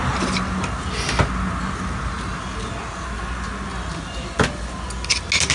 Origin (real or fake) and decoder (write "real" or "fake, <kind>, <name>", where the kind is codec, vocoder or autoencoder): real